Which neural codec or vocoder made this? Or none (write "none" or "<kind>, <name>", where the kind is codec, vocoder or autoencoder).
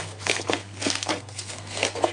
codec, SNAC